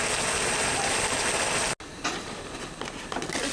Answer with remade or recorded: recorded